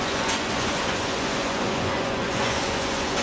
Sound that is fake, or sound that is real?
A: fake